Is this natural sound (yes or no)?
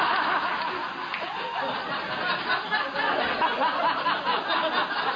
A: yes